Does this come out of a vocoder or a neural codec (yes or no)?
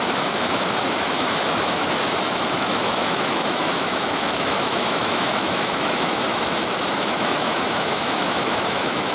yes